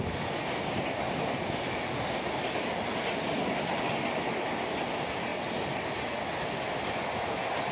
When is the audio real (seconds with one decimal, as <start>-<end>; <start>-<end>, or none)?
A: 0.0-7.7

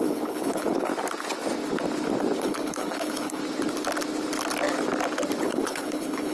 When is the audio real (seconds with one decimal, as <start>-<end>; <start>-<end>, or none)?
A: 0.9-2.4; 3.4-5.4